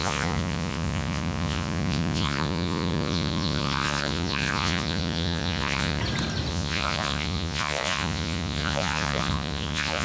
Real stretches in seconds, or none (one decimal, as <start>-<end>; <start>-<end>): 6.0-6.5